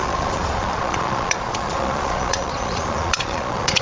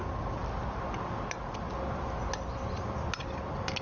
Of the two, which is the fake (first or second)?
first